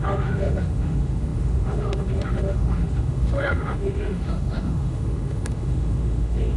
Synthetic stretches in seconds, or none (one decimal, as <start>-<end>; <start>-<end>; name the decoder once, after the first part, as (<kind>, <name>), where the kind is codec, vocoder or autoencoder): 0.0-6.6 (autoencoder, DAC-VAE)